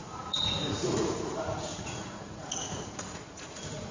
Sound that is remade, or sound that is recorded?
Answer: remade